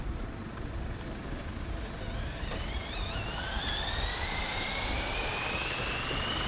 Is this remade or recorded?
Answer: recorded